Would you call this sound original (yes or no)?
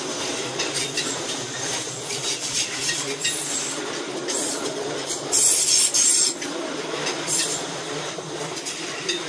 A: no